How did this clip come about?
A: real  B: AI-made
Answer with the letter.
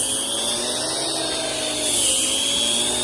A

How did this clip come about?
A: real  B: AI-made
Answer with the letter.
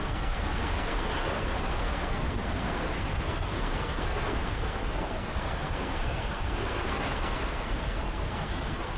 B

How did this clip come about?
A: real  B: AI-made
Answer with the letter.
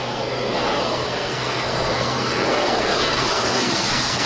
B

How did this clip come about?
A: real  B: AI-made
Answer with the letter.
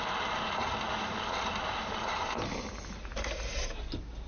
A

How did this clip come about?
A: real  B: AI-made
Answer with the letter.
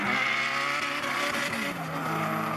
A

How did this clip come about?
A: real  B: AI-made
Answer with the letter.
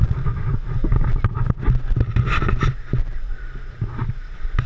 A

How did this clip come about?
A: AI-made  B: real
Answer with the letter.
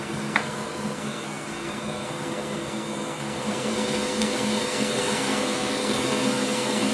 A